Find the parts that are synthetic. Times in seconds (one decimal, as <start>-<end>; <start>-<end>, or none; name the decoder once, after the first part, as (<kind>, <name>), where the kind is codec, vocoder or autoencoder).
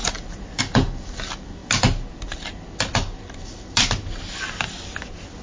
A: none